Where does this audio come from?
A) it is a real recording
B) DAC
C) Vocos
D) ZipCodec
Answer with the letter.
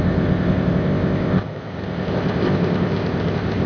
D